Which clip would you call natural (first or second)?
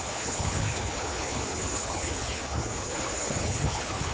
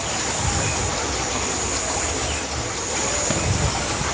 second